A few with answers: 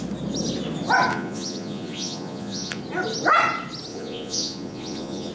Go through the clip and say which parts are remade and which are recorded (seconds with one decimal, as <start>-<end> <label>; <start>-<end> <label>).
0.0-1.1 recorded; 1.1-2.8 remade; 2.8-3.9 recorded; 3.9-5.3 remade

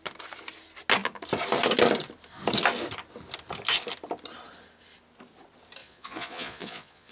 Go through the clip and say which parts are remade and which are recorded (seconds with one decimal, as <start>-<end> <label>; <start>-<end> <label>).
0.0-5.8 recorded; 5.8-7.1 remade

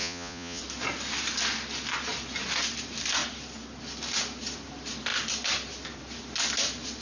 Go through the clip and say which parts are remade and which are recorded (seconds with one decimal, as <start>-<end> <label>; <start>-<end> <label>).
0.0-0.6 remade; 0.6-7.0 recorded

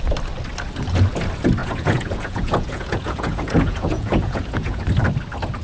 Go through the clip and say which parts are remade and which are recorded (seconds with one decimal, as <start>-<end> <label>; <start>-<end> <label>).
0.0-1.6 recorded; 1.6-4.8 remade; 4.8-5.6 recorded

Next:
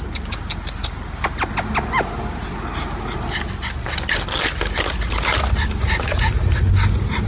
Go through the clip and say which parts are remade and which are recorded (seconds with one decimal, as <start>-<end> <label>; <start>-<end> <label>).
0.0-5.8 recorded; 5.8-6.7 remade; 6.7-7.3 recorded